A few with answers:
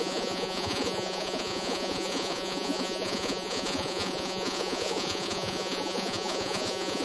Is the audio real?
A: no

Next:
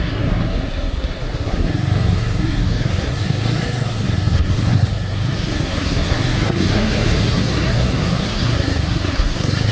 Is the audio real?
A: no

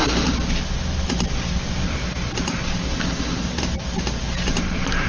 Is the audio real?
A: yes